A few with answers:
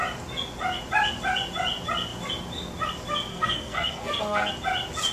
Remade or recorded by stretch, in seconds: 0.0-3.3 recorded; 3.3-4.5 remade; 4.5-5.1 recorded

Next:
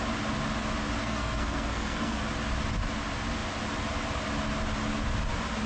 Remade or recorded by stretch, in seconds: 0.0-1.0 recorded; 1.0-2.2 remade; 2.2-5.7 recorded

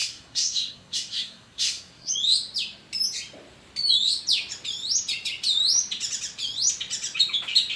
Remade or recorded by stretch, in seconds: 0.0-2.1 remade; 2.1-7.8 recorded

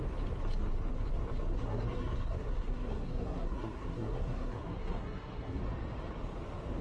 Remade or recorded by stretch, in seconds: 0.0-1.5 recorded; 1.5-5.6 remade; 5.6-6.8 recorded

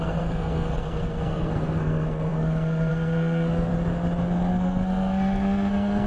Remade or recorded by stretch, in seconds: 0.0-3.7 remade; 3.7-4.5 recorded; 4.5-6.1 remade

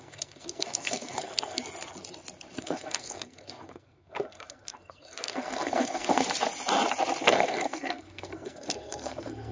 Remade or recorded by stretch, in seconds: 0.0-1.6 remade; 1.6-2.6 recorded; 2.6-6.2 remade; 6.2-7.2 recorded; 7.2-9.5 remade

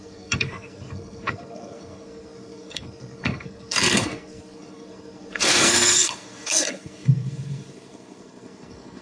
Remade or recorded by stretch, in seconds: 0.0-9.0 remade